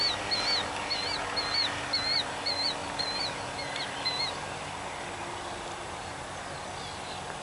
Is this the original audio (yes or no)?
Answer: yes